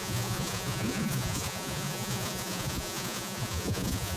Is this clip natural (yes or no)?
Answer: no